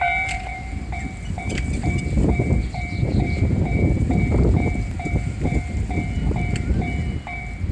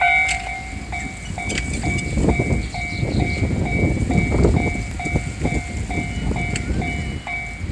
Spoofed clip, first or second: first